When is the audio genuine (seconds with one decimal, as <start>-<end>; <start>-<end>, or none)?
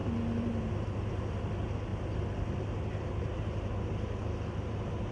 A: 0.0-5.1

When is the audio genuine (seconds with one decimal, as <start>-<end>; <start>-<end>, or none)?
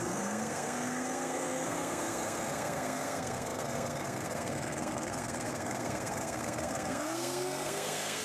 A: none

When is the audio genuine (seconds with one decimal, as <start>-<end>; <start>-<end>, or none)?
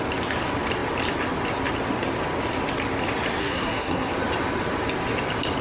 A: 0.0-3.4; 4.1-5.6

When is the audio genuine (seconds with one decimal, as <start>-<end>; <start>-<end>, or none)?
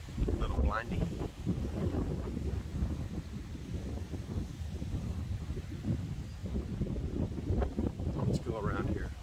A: 0.0-9.2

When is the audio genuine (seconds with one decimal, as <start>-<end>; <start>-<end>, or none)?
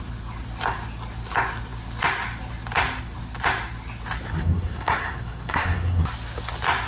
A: 0.0-4.4; 6.0-6.9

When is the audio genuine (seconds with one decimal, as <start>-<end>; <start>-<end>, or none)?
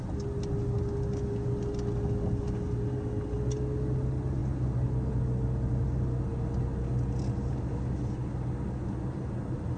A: 0.0-9.8